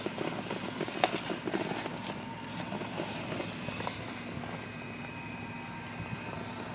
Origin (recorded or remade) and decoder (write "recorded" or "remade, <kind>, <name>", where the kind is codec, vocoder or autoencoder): recorded